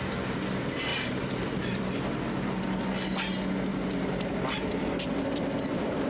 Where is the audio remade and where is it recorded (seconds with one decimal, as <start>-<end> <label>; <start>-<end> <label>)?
0.0-0.9 recorded; 0.9-1.8 remade; 1.8-3.7 recorded; 3.7-6.1 remade